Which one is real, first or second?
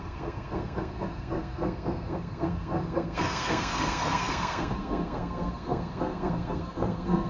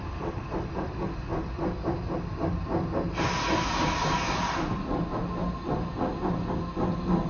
second